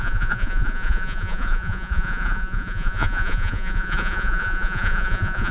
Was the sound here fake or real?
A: fake